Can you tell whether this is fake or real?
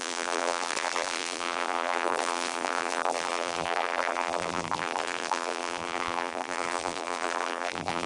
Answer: fake